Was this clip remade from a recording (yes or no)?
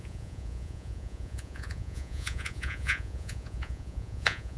yes